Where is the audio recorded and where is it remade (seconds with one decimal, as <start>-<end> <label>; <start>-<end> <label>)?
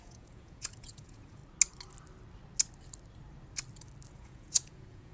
0.0-1.4 remade; 1.4-4.1 recorded; 4.1-5.1 remade